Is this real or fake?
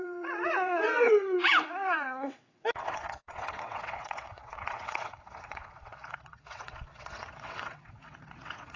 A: fake